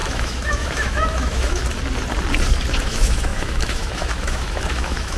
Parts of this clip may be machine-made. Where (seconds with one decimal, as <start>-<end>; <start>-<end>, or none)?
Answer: 0.0-1.6; 2.8-5.2